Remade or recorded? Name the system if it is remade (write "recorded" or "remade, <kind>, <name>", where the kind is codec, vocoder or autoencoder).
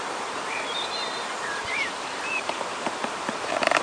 remade, vocoder, BigVGAN v2